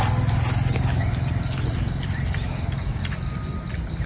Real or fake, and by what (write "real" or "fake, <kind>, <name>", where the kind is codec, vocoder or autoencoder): real